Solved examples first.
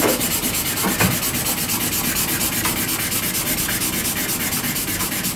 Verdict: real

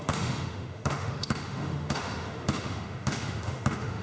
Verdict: fake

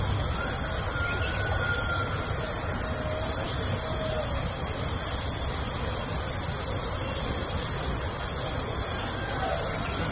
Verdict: real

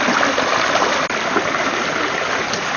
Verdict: real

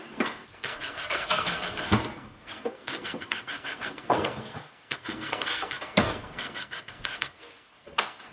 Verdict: fake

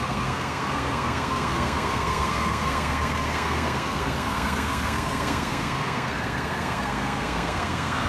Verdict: fake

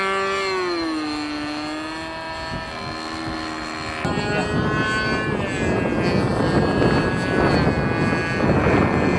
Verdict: real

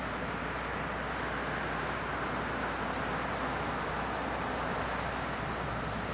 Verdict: real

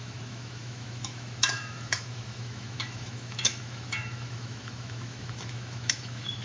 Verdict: fake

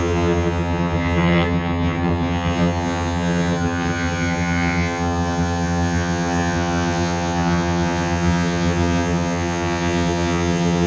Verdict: fake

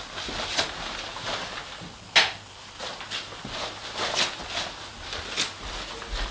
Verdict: real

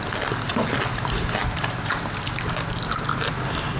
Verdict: real